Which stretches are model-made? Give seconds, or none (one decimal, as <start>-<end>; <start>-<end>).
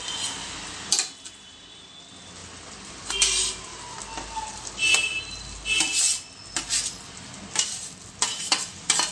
none